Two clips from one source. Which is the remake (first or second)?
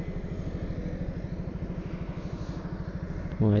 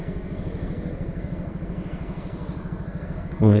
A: second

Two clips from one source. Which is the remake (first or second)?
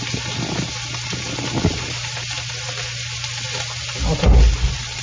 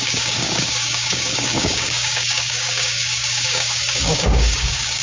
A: second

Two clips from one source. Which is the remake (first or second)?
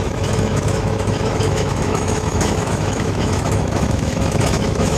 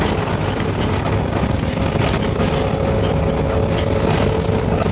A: first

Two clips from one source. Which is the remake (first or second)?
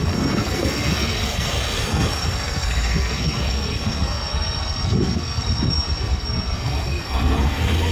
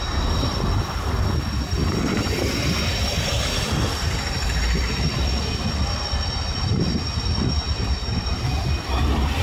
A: first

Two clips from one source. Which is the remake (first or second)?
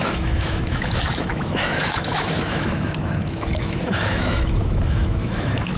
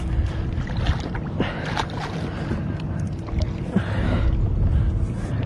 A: first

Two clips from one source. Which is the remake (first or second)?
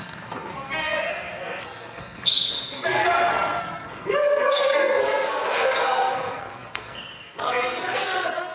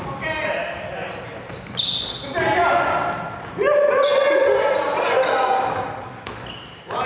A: first